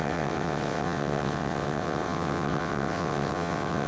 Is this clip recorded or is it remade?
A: remade